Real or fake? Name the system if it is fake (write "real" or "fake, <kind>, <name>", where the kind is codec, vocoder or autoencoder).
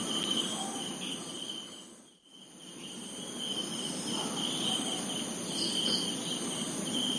real